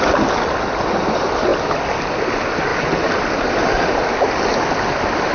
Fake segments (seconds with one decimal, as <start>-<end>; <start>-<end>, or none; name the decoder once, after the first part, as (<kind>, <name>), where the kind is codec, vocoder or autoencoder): none